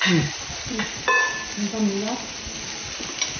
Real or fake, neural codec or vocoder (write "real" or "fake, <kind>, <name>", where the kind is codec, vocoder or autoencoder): real